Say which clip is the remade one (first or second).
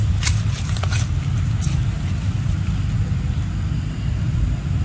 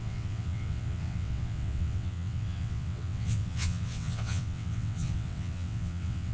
second